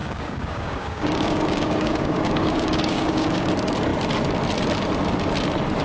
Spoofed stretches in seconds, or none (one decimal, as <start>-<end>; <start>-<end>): 0.0-3.5